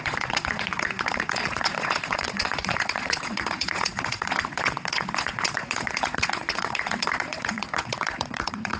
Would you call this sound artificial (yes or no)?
yes